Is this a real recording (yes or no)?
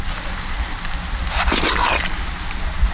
yes